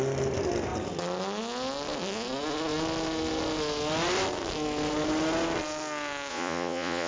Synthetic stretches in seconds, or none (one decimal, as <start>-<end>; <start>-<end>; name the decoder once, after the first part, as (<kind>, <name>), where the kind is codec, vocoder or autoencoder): 6.3-7.1 (vocoder, Vocos)

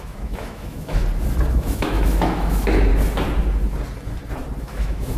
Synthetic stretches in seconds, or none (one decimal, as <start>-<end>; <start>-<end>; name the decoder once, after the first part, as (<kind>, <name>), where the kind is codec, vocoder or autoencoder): 0.0-1.0 (autoencoder, DAC-VAE); 1.5-2.9; 4.6-5.2

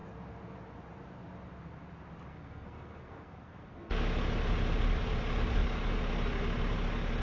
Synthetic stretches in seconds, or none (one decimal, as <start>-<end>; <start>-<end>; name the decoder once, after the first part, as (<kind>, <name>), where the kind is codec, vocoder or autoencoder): 2.3-4.0 (codec, SNAC)

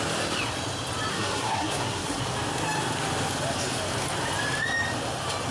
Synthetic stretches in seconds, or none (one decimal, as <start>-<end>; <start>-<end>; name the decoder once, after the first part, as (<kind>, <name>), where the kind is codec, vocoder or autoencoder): 1.1-2.2 (codec, SNAC)